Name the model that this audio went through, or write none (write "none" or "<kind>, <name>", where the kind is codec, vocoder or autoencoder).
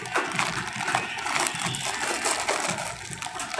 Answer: none